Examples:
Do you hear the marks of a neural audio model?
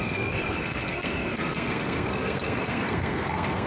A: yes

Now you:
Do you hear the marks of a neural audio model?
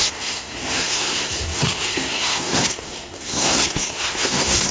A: yes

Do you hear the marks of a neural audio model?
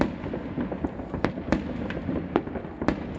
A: no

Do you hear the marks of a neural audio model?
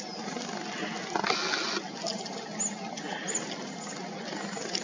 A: no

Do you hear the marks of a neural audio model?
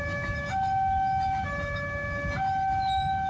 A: no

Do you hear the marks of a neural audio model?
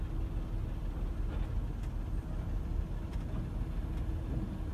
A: no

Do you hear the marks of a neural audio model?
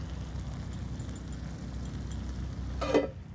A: no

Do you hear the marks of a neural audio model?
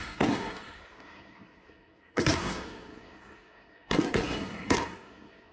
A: yes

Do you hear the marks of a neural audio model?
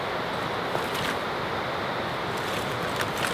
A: no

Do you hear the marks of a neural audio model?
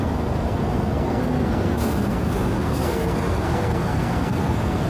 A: yes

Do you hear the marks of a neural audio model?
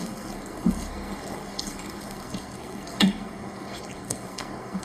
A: yes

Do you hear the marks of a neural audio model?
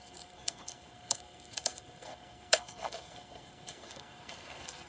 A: yes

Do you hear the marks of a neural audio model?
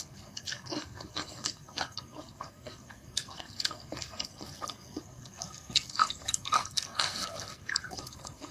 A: yes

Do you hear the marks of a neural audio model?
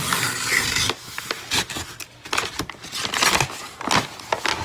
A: no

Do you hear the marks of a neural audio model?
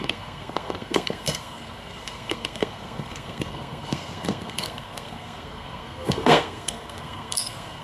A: yes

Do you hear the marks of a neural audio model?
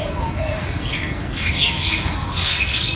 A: yes